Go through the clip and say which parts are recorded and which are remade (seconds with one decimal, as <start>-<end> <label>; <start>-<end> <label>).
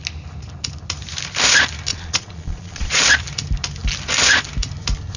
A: 0.0-1.9 recorded; 1.9-3.0 remade; 3.0-5.2 recorded